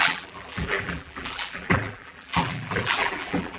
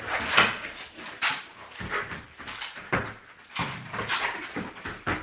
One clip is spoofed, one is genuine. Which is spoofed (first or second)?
first